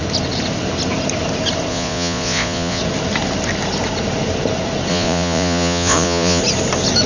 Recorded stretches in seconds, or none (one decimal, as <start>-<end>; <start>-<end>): 0.0-1.7; 2.8-4.9; 6.4-7.1